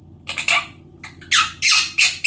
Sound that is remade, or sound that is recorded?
recorded